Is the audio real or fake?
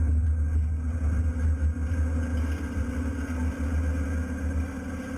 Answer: real